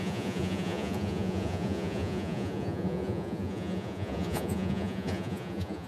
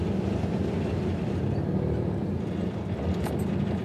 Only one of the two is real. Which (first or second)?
second